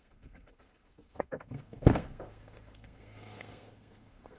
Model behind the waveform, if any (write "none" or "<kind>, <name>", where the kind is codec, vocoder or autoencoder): codec, SNAC